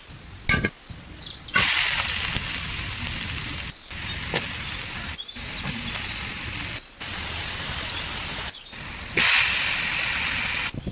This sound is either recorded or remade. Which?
recorded